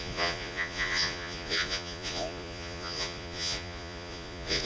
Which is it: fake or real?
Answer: fake